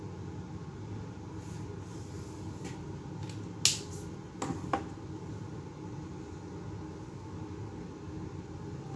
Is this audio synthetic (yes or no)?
no